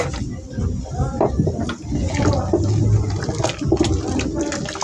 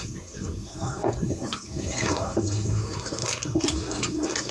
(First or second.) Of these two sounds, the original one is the first